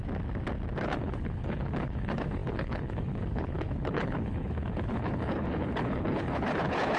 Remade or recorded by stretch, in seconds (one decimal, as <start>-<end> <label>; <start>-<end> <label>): 0.0-0.8 recorded; 0.8-7.0 remade